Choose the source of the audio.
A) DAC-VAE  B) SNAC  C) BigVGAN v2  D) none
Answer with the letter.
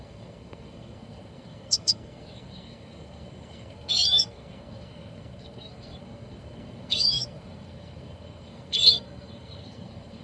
B